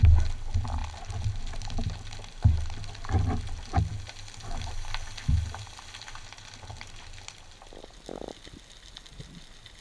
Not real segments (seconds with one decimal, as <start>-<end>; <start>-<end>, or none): none